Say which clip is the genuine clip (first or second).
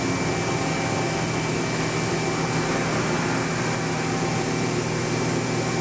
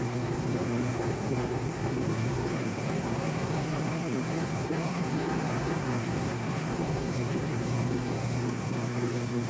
first